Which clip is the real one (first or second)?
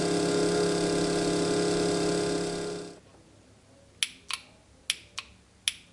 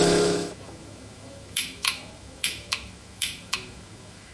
first